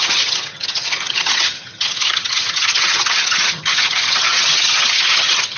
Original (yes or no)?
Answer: no